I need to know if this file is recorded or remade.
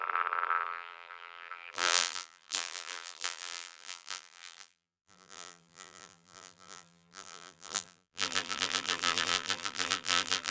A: remade